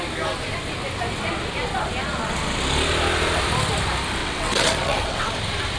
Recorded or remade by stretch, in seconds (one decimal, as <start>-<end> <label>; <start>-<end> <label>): 0.0-4.2 recorded; 4.2-5.2 remade; 5.2-5.8 recorded